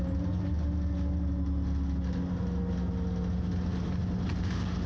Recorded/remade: recorded